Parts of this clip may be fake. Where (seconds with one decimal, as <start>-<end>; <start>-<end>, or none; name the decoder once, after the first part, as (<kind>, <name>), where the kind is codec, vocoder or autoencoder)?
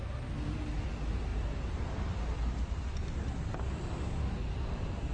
none